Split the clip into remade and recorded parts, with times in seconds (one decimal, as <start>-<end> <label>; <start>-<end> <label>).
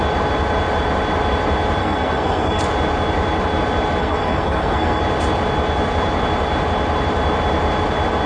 0.0-1.8 recorded; 1.8-2.6 remade; 2.6-4.0 recorded; 4.0-5.0 remade; 5.0-8.3 recorded